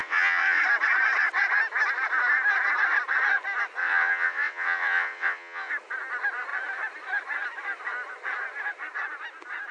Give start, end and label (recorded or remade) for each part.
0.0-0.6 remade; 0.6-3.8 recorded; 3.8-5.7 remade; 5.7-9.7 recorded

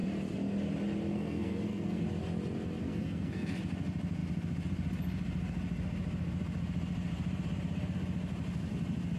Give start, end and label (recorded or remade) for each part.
0.0-1.1 recorded; 1.1-2.0 remade; 2.0-2.8 recorded; 2.8-3.6 remade; 3.6-9.2 recorded

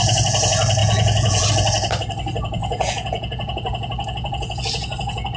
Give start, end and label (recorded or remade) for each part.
0.0-0.8 recorded; 0.8-1.5 remade; 1.5-2.6 recorded; 2.6-4.6 remade; 4.6-5.4 recorded

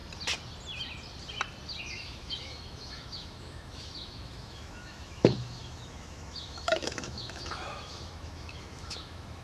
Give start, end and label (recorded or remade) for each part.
0.0-1.8 recorded; 1.8-9.4 remade

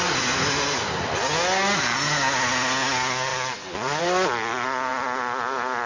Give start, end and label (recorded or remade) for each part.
0.0-3.3 recorded; 3.3-4.0 remade; 4.0-5.9 recorded

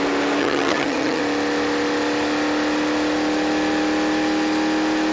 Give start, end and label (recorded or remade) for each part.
0.0-0.4 recorded; 0.4-1.2 remade; 1.2-5.1 recorded

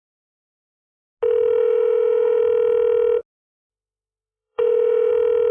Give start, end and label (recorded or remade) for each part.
0.0-1.6 recorded; 1.6-2.4 remade; 2.4-3.7 recorded; 3.7-5.1 remade; 5.1-5.5 recorded

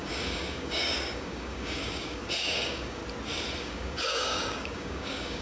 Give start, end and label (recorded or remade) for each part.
0.0-3.0 remade; 3.0-3.6 recorded; 3.6-5.4 remade